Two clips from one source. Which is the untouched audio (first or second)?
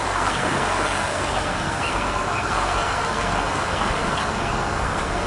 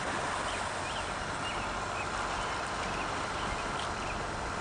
second